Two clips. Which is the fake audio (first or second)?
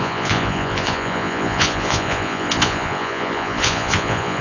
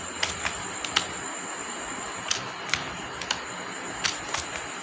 first